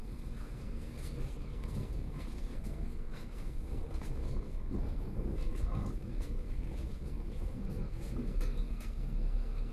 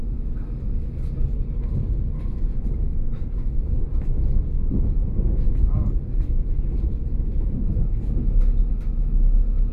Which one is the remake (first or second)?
first